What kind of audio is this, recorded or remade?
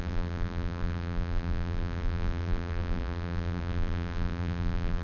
remade